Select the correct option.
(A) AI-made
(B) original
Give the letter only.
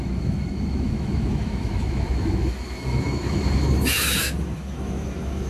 A